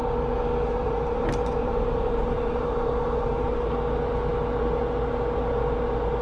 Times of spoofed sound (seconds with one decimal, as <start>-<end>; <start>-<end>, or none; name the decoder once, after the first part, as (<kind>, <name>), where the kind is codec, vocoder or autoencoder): 0.0-3.7 (vocoder, BigVGAN v2)